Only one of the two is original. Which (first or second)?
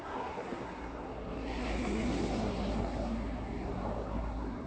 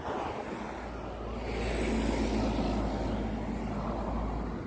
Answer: second